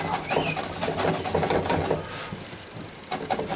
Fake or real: real